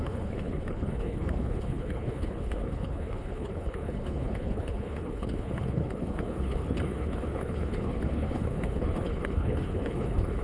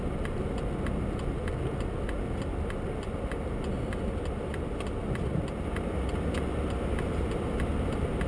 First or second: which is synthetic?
first